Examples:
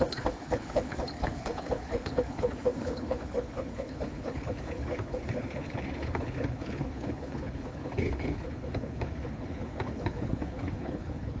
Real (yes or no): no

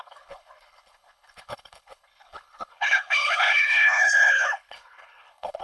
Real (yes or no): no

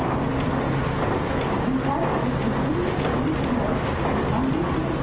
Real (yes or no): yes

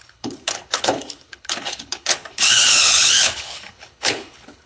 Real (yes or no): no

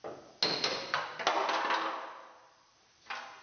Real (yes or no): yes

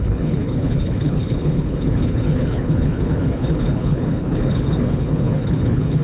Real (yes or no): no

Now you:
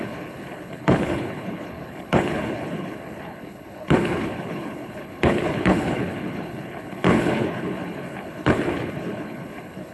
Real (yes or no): no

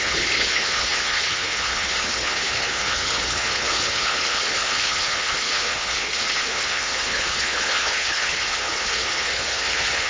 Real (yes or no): no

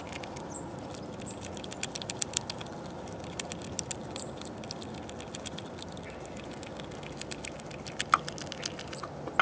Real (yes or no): yes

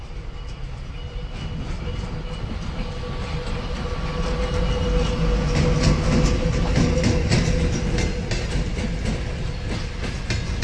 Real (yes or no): yes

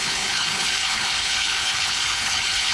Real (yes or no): no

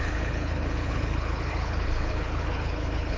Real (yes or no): no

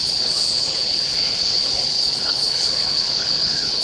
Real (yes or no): no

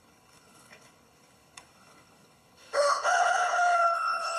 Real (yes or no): no